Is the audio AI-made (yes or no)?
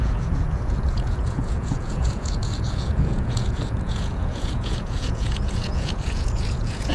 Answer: yes